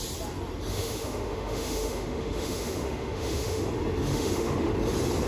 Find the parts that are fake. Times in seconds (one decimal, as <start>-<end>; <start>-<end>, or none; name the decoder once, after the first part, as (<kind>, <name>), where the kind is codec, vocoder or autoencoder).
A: 0.7-3.6 (autoencoder, DAC-VAE); 4.1-4.7

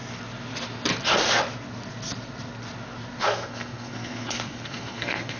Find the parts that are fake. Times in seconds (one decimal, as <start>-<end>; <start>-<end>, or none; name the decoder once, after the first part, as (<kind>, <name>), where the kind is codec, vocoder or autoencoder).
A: 3.2-5.4 (codec, SNAC)

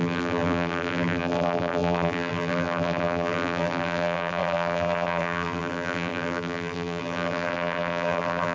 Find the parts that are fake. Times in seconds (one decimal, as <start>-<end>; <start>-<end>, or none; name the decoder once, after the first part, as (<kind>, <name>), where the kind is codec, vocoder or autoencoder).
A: 0.0-8.5 (vocoder, BigVGAN v2)

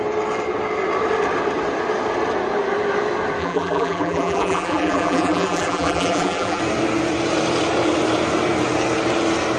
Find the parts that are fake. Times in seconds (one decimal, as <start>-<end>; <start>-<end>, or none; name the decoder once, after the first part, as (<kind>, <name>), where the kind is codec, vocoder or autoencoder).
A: 3.4-6.6 (vocoder, BigVGAN v2)

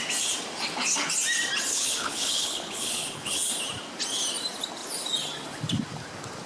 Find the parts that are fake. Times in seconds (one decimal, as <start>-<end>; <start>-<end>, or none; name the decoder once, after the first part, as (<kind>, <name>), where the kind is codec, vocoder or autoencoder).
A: 1.7-3.5 (codec, HILCodec)

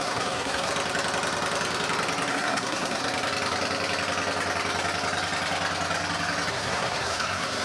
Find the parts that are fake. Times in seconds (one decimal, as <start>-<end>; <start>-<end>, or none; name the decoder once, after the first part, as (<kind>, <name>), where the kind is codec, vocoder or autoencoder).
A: 0.0-0.7 (codec, SNAC); 2.3-3.0; 6.5-7.6

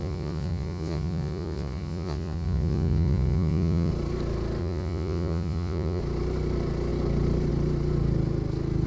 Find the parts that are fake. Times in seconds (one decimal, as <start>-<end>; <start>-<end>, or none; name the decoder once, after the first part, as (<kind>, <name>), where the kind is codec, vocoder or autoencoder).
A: 0.0-3.9 (vocoder, Vocos); 4.6-6.0